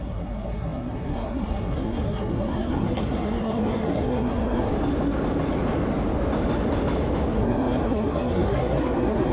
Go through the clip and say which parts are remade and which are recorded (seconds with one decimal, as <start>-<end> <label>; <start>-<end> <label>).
0.0-4.7 remade; 4.7-7.3 recorded; 7.3-9.3 remade